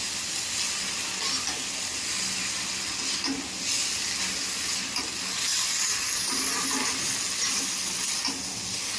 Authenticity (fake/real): real